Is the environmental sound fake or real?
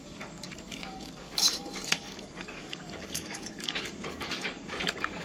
fake